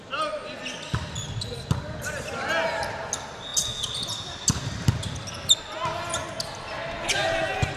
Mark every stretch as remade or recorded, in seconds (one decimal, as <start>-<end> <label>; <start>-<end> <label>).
0.0-7.8 recorded